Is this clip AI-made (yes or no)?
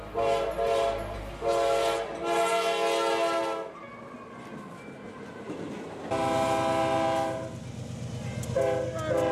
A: no